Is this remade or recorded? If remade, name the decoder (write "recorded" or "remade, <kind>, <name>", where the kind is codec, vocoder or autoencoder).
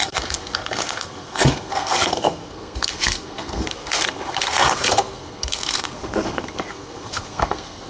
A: remade, codec, SNAC